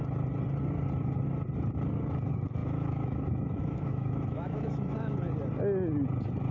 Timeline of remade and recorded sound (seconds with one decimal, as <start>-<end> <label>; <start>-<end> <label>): 0.0-2.6 recorded; 2.6-5.2 remade; 5.2-6.5 recorded